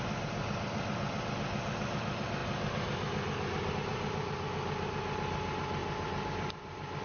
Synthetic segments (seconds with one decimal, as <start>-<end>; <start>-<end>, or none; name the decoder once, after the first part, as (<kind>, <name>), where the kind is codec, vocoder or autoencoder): 5.8-7.0 (vocoder, BigVGAN v2)